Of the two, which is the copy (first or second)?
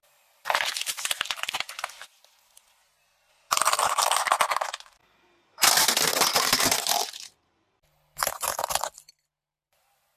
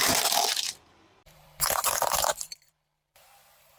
second